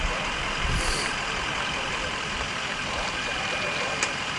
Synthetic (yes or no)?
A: no